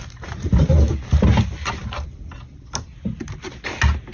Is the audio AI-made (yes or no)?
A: no